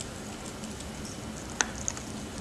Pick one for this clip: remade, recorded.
recorded